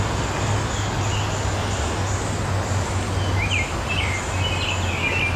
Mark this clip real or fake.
real